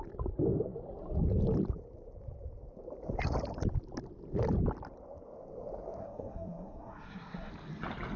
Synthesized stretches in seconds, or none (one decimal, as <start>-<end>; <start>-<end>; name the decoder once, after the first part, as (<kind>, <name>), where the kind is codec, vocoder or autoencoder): 6.0-7.5 (codec, SNAC)